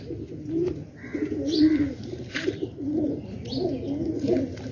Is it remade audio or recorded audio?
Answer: remade